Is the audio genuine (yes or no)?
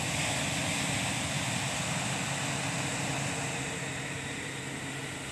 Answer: yes